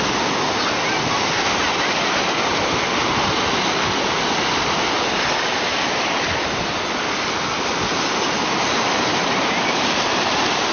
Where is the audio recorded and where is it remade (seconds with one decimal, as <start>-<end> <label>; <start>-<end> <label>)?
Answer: 0.0-10.7 recorded